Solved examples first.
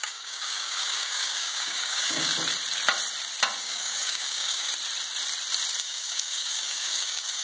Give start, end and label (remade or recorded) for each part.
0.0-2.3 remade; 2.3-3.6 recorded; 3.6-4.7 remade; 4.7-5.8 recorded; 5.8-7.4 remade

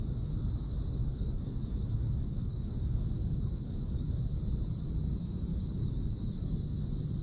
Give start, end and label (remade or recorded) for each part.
0.0-1.0 recorded; 1.0-4.1 remade; 4.1-5.5 recorded; 5.5-6.8 remade; 6.8-7.2 recorded